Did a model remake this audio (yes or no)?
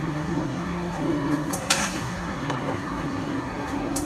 yes